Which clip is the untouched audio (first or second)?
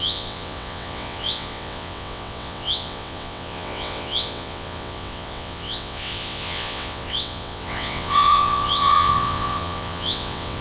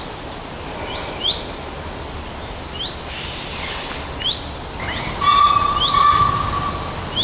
second